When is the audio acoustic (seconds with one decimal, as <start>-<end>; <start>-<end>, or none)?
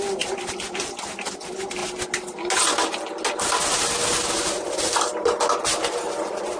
0.0-6.6